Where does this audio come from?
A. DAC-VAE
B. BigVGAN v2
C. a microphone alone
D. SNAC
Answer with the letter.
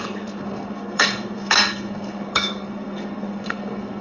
D